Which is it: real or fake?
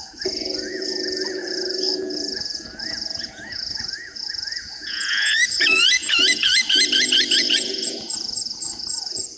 fake